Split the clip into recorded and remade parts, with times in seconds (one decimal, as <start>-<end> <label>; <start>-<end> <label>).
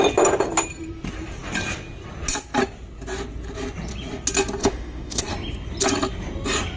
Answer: 0.0-4.6 recorded; 4.6-5.2 remade; 5.2-6.8 recorded